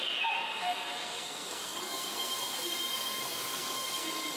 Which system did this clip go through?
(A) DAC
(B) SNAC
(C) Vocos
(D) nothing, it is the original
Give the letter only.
B